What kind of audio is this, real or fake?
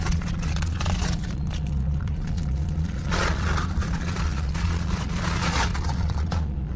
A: fake